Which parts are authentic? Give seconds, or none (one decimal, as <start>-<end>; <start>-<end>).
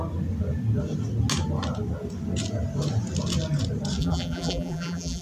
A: 0.0-4.0